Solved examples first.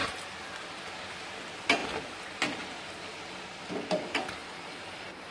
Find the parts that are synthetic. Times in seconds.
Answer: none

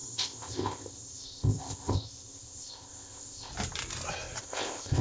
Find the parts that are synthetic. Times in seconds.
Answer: 0.0-3.5; 4.4-5.0

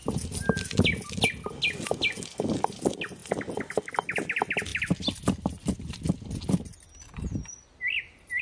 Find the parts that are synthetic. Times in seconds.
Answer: none

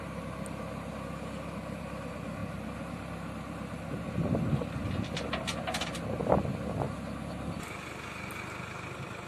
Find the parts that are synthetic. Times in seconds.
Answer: none

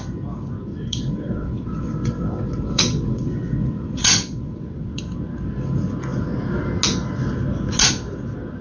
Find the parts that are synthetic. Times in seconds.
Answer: 0.7-5.0

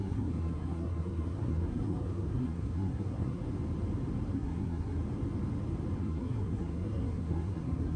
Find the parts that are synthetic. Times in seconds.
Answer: 0.0-3.4; 4.3-5.0; 6.0-8.0

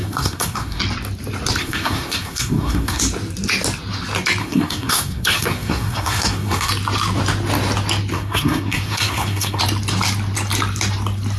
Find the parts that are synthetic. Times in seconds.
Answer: 0.0-0.8; 1.6-3.0; 4.4-6.7; 8.1-9.6

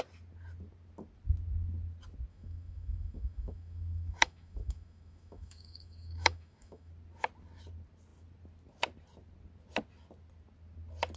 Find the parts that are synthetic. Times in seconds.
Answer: 2.3-6.9